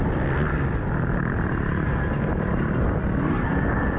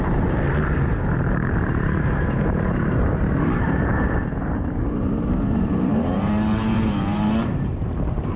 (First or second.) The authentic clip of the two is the first